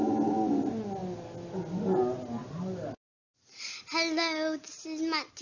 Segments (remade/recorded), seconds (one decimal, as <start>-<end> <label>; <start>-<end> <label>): 0.0-5.4 recorded